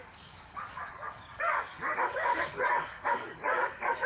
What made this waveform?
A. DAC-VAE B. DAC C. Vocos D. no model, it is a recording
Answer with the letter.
B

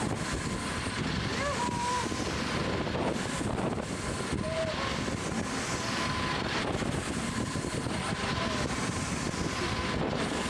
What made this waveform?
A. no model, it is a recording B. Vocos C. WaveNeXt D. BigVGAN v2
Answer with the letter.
A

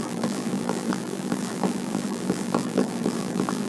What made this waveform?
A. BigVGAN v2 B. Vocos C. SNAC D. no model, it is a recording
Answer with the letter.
A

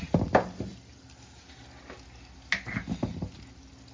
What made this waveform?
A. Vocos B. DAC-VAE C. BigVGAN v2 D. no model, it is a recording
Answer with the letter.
D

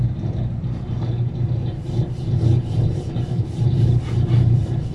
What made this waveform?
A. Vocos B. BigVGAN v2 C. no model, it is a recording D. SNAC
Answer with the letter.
C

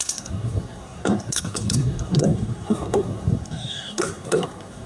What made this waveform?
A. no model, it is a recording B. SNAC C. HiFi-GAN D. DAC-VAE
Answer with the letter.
B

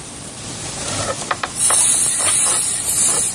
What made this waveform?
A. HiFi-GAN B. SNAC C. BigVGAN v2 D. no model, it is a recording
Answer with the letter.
C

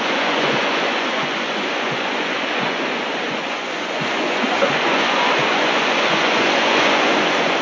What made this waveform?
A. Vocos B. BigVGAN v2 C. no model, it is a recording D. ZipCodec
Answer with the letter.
A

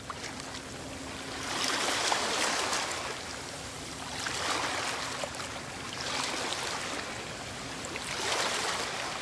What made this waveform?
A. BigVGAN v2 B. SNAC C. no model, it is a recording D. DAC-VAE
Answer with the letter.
C